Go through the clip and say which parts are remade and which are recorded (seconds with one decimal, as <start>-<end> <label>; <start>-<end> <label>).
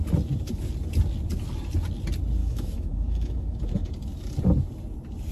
0.0-2.4 recorded; 2.4-3.9 remade; 3.9-5.3 recorded